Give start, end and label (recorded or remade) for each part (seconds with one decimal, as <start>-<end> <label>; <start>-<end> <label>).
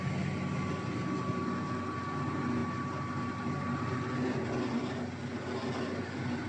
0.0-6.5 recorded